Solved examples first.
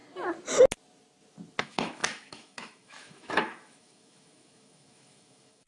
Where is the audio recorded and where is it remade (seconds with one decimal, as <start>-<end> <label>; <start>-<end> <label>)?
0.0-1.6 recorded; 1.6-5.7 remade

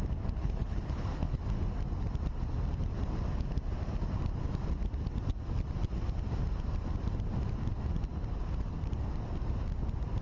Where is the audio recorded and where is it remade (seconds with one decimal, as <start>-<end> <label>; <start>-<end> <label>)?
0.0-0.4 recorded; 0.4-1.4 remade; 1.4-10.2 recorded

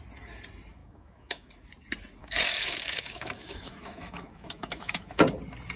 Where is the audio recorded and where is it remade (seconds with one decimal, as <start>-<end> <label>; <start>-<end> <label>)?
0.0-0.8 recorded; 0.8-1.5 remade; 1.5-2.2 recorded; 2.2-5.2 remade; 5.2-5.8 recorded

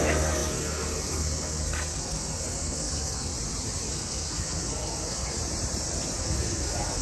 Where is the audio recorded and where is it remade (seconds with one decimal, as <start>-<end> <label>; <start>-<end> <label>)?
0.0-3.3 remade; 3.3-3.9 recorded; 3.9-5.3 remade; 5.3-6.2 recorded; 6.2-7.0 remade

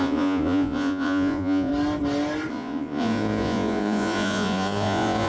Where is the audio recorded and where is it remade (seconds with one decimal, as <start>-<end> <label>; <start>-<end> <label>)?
0.0-1.7 remade; 1.7-2.5 recorded; 2.5-5.3 remade

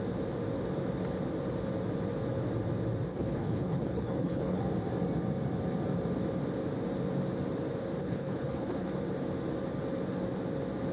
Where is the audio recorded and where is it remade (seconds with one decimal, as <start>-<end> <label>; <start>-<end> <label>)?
0.0-3.1 recorded; 3.1-4.6 remade; 4.6-8.0 recorded; 8.0-8.9 remade; 8.9-10.9 recorded

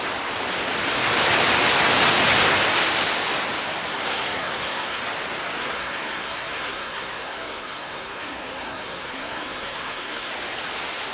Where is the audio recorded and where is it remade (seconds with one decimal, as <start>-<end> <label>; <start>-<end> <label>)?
0.0-3.9 recorded; 3.9-5.0 remade; 5.0-5.6 recorded; 5.6-10.3 remade; 10.3-11.1 recorded